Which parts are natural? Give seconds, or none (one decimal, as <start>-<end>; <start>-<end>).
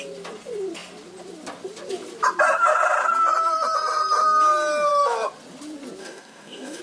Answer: 0.0-6.0